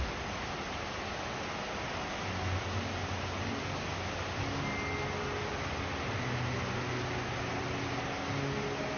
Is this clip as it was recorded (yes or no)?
yes